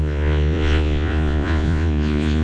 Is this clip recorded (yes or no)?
no